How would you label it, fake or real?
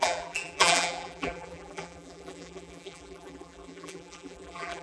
fake